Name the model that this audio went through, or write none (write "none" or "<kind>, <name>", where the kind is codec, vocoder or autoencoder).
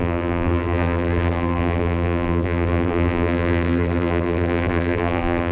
vocoder, BigVGAN v2